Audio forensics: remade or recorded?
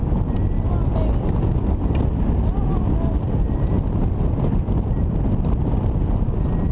recorded